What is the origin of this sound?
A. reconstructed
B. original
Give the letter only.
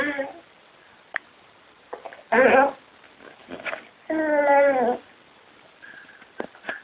B